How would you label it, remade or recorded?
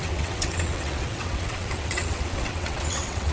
remade